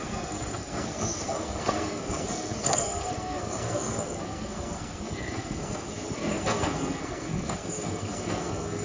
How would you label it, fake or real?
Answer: fake